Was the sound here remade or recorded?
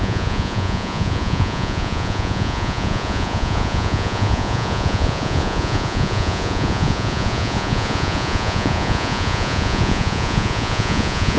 remade